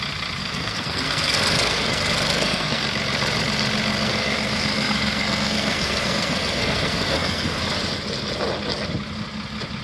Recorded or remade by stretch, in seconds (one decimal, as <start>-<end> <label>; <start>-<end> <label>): 0.0-0.4 recorded; 0.4-2.8 remade; 2.8-3.9 recorded; 3.9-7.6 remade; 7.6-9.8 recorded